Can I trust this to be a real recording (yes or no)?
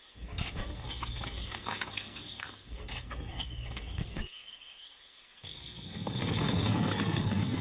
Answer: no